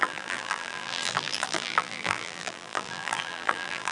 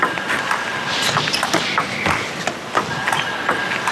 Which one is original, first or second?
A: second